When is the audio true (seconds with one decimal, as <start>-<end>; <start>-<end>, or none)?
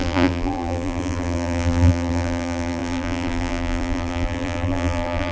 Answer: none